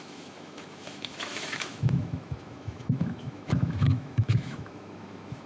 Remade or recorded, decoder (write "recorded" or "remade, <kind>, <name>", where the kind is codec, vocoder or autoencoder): remade, autoencoder, DAC-VAE